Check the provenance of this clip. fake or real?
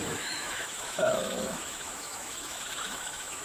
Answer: fake